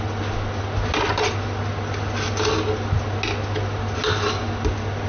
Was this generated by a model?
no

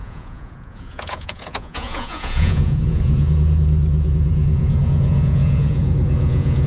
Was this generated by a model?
yes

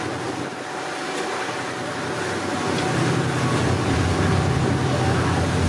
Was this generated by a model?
no